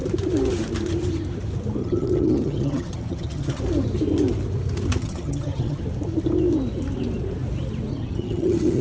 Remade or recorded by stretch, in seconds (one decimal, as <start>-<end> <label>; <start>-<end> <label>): 0.0-1.8 recorded; 1.8-3.6 remade; 3.6-5.0 recorded; 5.0-5.8 remade; 5.8-7.9 recorded; 7.9-8.8 remade